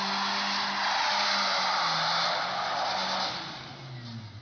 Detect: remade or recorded recorded